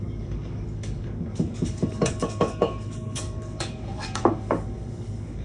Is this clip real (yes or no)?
no